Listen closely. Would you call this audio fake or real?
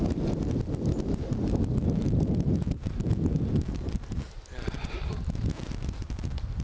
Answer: real